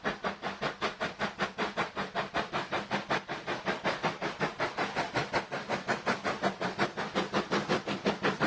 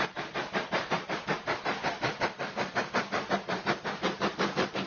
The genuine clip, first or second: first